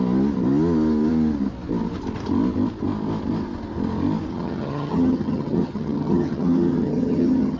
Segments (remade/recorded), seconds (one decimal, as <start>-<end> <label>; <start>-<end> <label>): 0.0-4.3 recorded; 4.3-7.6 remade